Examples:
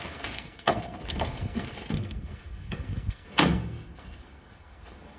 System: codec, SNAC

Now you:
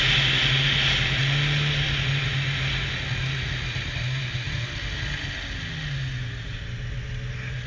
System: none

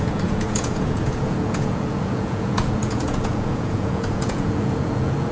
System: vocoder, Vocos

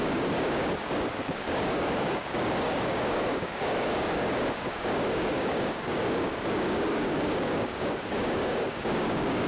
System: codec, DAC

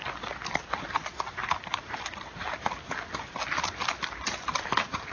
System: none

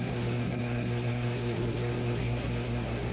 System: codec, SNAC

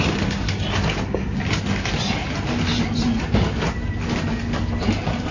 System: none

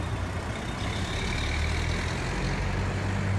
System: none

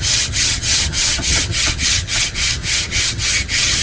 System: vocoder, HiFi-GAN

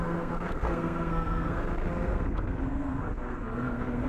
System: codec, SNAC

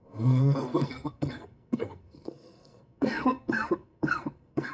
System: codec, SNAC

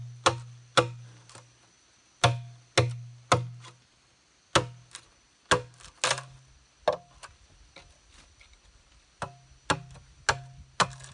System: none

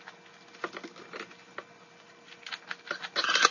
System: none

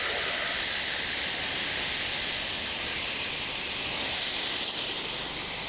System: none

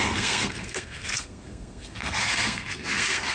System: codec, SNAC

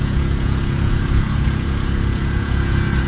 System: vocoder, Vocos